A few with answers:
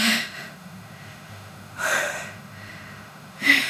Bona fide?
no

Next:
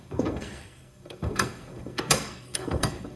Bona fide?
no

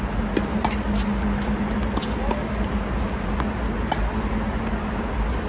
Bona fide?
yes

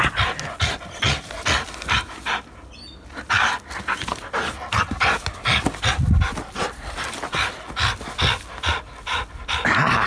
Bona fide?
yes